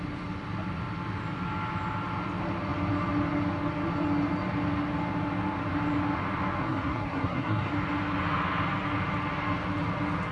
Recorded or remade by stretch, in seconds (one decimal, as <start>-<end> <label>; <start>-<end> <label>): 0.0-6.6 recorded; 6.6-7.7 remade; 7.7-10.3 recorded